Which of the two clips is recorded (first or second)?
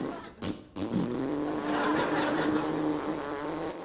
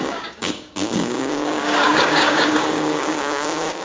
first